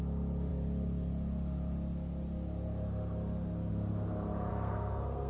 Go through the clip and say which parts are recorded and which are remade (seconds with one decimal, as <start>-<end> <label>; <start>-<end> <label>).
0.0-4.5 recorded; 4.5-5.3 remade